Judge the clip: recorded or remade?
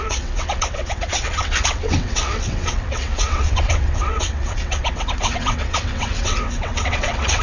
remade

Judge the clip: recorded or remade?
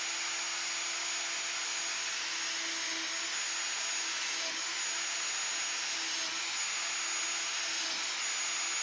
recorded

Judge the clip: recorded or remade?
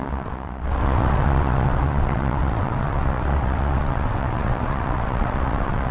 remade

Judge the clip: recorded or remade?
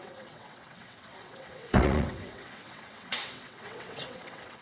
remade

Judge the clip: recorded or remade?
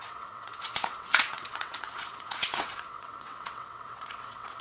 remade